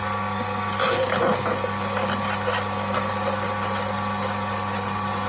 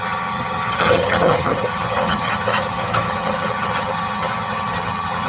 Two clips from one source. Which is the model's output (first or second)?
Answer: second